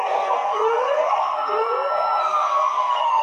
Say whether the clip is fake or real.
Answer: fake